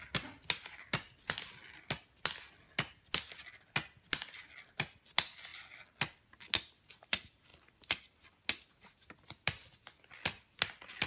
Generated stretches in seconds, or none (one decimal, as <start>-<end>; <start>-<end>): none